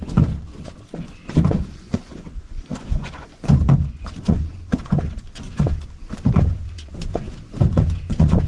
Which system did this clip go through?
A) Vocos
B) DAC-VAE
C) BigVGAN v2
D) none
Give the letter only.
A